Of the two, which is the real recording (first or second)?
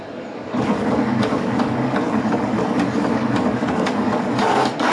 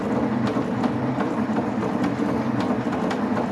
second